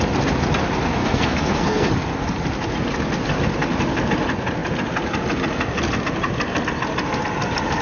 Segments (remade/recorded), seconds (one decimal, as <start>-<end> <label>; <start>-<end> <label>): 0.0-1.0 recorded; 1.0-1.9 remade; 1.9-7.8 recorded